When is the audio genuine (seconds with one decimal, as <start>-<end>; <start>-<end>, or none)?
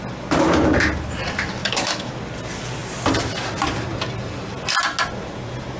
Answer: 0.0-1.6; 2.1-5.8